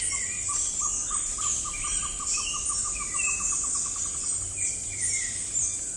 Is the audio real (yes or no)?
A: no